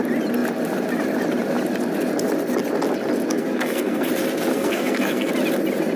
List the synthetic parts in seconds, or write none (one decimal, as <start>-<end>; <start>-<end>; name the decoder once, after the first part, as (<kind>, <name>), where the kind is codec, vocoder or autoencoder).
3.3-4.1 (codec, SNAC); 4.5-5.3